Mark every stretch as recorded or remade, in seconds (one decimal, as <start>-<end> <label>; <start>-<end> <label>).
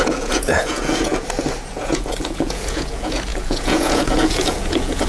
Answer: 0.0-1.1 remade; 1.1-1.7 recorded; 1.7-5.1 remade